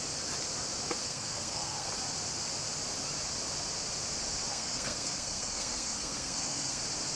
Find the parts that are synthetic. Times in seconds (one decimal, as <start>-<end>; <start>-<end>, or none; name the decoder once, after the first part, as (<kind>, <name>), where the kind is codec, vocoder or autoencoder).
1.0-1.9 (codec, SNAC); 4.5-6.8